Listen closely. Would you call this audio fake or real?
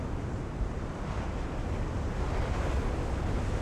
real